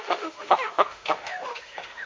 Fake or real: fake